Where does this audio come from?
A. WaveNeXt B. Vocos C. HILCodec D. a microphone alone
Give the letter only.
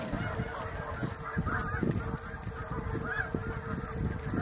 D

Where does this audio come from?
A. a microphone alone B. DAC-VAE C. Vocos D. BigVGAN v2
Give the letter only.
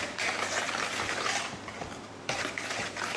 D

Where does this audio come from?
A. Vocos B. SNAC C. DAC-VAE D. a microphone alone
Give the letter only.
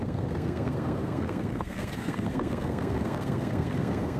B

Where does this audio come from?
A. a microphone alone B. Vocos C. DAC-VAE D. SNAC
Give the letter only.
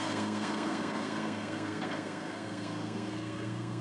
D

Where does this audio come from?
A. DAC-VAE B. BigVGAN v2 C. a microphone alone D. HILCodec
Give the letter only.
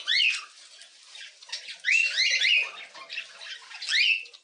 C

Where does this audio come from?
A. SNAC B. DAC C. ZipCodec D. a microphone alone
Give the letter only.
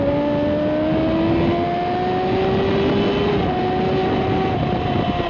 D